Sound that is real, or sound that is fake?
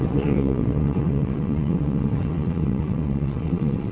fake